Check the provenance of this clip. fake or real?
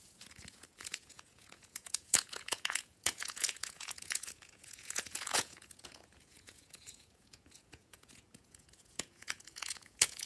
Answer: fake